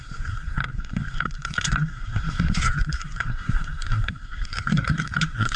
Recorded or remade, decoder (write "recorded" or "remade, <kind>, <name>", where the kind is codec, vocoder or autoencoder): remade, codec, SNAC